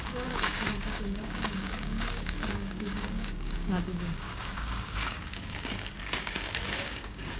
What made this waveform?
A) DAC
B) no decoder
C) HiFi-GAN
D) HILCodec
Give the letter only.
A